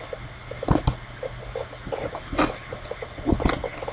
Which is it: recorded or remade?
recorded